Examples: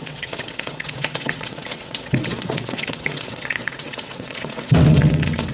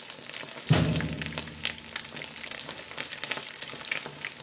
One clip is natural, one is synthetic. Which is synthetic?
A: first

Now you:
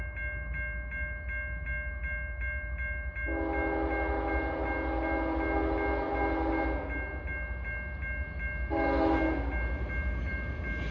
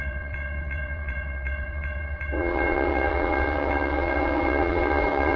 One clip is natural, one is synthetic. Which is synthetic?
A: second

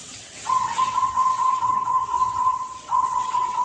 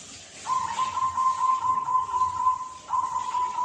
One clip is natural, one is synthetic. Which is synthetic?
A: first